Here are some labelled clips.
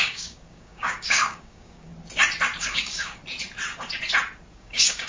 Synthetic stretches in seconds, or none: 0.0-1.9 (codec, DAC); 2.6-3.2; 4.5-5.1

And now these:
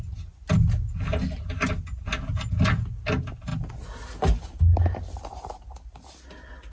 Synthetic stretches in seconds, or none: none

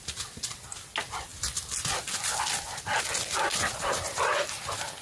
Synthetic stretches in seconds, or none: none

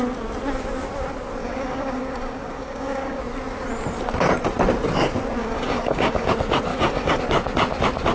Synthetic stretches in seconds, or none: 1.4-3.2 (codec, DAC); 5.4-6.3; 6.7-7.2

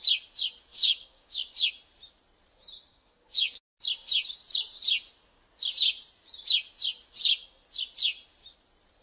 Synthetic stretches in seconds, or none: 0.7-1.7 (codec, DAC); 2.9-3.6

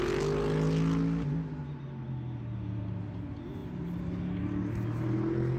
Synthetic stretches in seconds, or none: none

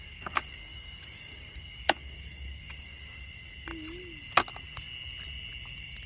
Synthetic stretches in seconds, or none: 0.0-3.7 (codec, DAC)